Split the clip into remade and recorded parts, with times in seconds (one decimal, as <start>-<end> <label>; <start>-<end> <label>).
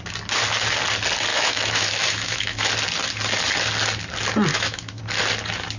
0.0-1.3 recorded; 1.3-2.7 remade; 2.7-4.5 recorded; 4.5-5.0 remade; 5.0-5.8 recorded